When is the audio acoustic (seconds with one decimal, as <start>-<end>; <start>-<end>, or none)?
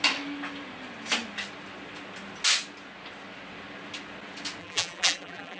0.0-4.6